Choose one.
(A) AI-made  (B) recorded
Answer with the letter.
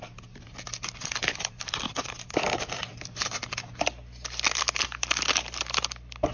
B